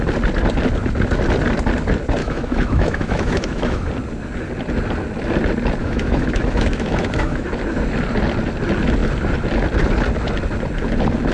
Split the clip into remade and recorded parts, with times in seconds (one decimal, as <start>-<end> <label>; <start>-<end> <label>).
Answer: 0.0-2.2 recorded; 2.2-3.9 remade; 3.9-5.8 recorded; 5.8-7.5 remade; 7.5-11.3 recorded